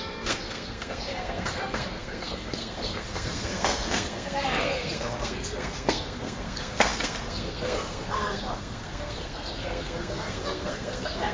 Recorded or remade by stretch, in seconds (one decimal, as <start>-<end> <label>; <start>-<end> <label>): 0.0-11.3 remade